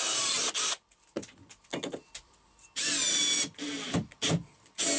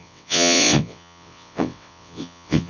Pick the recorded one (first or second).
first